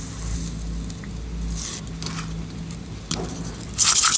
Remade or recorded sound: recorded